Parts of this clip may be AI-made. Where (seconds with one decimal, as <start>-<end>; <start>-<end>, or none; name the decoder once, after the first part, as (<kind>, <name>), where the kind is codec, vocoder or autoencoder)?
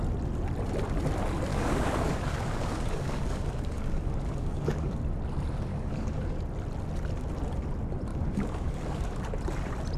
1.5-5.0 (codec, DAC); 5.7-6.4; 8.1-9.2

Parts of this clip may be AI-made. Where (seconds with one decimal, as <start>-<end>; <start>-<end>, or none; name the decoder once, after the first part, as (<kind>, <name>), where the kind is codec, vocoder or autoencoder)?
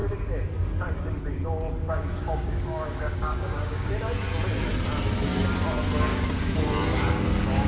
1.8-3.9 (codec, DAC); 6.1-7.7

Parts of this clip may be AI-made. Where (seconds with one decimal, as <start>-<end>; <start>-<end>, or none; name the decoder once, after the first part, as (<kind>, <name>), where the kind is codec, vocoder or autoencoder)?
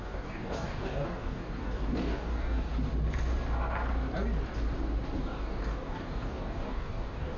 0.0-2.7 (codec, DAC); 5.2-7.4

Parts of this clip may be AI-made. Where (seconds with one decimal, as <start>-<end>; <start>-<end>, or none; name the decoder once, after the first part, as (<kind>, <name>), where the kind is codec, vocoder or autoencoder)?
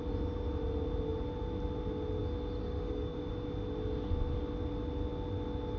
2.6-3.3 (codec, DAC)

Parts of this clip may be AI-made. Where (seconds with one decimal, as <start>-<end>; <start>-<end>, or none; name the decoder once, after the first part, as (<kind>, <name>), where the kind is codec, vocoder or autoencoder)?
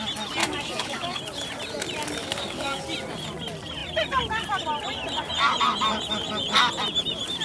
0.4-1.2 (codec, DAC); 2.2-2.8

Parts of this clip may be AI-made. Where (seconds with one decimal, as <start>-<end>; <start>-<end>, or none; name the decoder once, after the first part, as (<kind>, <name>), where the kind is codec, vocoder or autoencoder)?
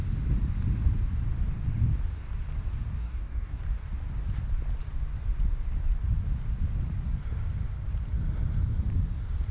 3.0-3.6 (codec, DAC)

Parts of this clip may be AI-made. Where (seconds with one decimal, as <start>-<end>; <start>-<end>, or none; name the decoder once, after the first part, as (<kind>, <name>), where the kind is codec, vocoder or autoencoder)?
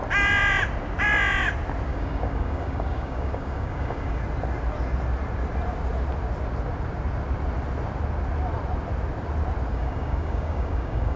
1.9-4.2 (codec, DAC); 9.7-11.2